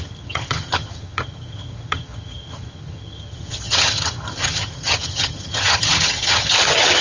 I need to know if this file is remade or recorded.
remade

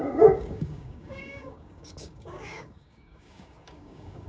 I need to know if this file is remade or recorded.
remade